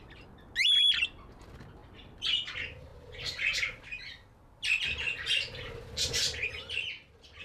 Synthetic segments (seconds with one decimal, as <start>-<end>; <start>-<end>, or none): none